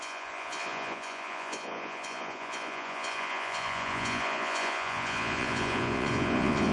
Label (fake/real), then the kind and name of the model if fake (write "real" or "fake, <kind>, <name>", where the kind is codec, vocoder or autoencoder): fake, vocoder, Vocos